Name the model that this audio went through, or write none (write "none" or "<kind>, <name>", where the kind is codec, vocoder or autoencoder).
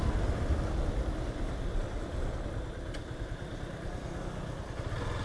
none